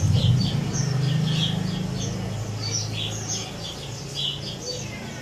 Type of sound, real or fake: real